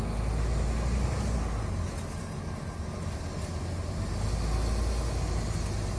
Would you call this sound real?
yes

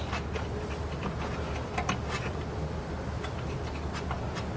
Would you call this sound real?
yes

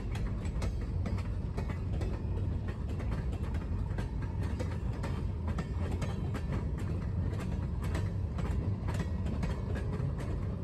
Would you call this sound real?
yes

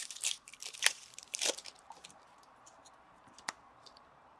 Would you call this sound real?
no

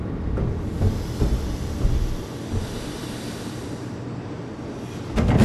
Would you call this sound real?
no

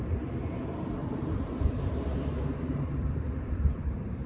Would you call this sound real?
no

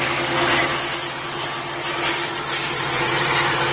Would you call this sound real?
no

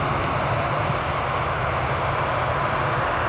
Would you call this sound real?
yes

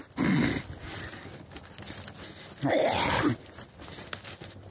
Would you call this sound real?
yes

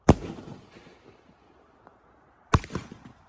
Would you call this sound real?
no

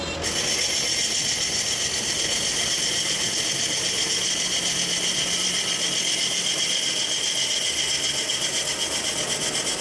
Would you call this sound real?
yes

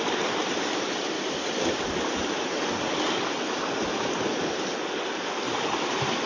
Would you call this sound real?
no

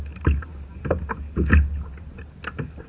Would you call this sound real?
yes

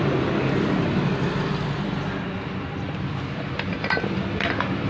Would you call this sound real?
no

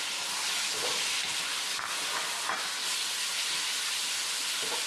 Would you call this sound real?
yes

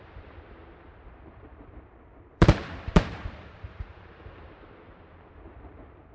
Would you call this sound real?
no